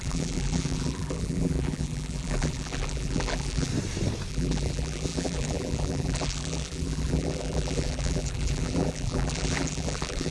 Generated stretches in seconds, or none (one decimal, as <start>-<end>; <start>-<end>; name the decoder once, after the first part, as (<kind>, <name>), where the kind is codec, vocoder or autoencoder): 0.0-3.7 (vocoder, BigVGAN v2); 4.3-10.3